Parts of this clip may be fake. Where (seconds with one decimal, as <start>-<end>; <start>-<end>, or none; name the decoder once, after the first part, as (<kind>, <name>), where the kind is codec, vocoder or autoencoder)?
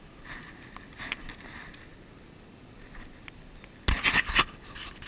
none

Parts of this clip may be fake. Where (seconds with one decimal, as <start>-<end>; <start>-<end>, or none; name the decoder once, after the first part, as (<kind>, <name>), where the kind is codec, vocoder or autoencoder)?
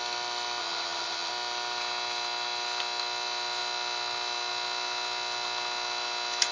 0.6-1.3 (vocoder, HiFi-GAN)